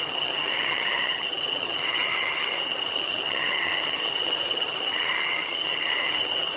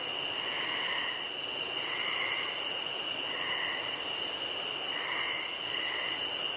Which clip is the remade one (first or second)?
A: first